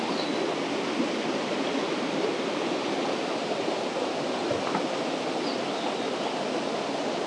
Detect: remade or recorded recorded